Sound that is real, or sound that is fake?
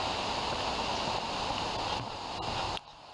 real